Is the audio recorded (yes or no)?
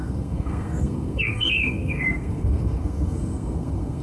no